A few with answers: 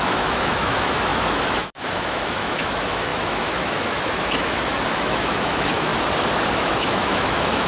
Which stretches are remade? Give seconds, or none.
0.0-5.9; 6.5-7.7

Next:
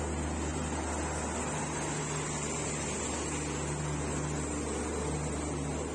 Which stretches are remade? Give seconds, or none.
none

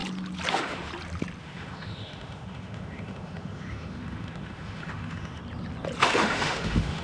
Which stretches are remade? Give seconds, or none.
0.5-0.9; 1.4-5.4; 6.0-7.0

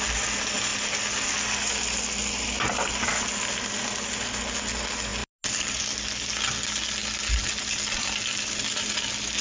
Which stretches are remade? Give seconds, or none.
none